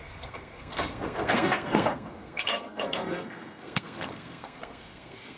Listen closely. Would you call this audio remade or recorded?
remade